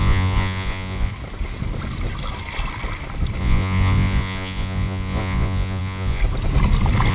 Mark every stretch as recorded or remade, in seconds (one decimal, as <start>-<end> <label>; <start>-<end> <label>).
0.0-1.1 remade; 1.1-3.4 recorded; 3.4-6.2 remade; 6.2-7.1 recorded